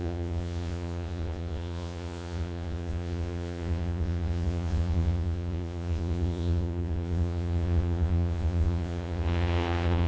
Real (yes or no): no